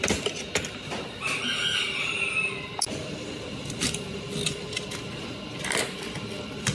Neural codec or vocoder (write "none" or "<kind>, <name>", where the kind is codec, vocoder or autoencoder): none